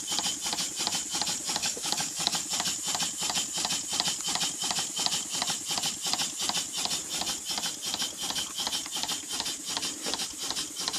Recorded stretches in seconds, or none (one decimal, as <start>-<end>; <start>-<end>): 0.0-1.6; 2.5-11.0